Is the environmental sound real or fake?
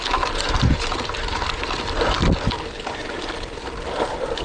real